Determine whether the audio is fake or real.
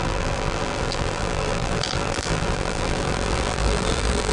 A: fake